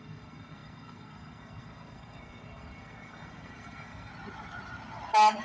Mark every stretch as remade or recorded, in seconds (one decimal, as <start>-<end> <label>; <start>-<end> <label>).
0.0-4.1 remade; 4.1-5.4 recorded